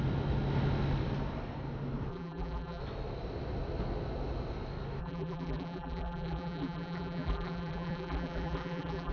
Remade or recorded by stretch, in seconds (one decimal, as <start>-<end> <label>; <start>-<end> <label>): 0.0-2.1 recorded; 2.1-2.8 remade; 2.8-5.0 recorded; 5.0-9.1 remade